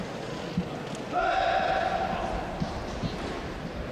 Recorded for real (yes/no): yes